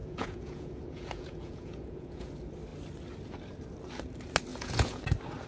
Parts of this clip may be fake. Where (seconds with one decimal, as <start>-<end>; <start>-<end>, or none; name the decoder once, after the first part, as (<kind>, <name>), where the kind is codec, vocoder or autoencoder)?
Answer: 0.0-2.3 (vocoder, Vocos); 4.5-5.0

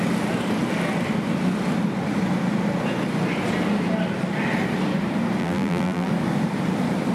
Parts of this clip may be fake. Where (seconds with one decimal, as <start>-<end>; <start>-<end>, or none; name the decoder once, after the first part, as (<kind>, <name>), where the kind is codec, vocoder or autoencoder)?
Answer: 5.4-6.1 (vocoder, BigVGAN v2)

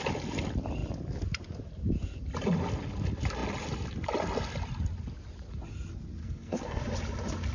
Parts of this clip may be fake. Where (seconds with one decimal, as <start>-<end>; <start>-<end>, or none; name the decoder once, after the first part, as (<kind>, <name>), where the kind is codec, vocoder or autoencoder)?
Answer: 6.2-6.8 (codec, SNAC)

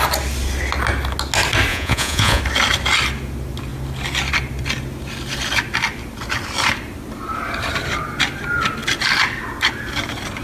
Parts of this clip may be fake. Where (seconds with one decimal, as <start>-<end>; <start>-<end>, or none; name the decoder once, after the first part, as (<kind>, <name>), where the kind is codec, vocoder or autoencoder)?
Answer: 1.7-2.4 (vocoder, Vocos)

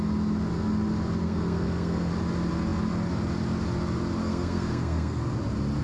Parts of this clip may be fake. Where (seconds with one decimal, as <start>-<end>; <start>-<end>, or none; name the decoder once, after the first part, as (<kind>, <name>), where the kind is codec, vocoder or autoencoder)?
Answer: 1.2-2.1 (codec, SNAC); 4.2-5.2

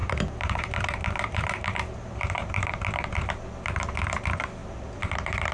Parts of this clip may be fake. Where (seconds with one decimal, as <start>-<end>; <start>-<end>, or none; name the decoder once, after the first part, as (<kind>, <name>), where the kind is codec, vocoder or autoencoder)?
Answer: 0.0-3.3 (vocoder, BigVGAN v2); 4.6-5.5

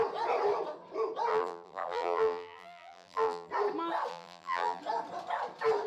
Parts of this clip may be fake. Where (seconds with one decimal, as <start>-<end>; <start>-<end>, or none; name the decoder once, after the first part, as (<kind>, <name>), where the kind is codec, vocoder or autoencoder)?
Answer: 1.3-3.5 (vocoder, BigVGAN v2); 4.1-4.8

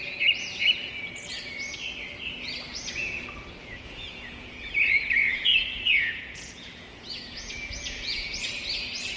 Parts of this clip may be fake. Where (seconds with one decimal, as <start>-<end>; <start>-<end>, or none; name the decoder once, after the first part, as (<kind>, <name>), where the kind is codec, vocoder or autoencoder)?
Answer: 3.6-8.3 (vocoder, Vocos)